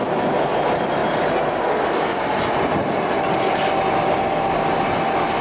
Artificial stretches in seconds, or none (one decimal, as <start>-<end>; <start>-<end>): none